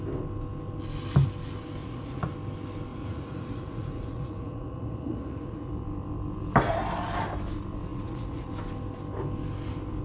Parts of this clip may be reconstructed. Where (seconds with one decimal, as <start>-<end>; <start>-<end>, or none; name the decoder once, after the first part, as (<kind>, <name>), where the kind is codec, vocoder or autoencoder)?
1.8-2.3 (vocoder, Vocos); 2.9-5.7; 7.9-8.5